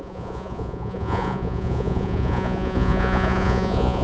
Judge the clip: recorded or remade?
remade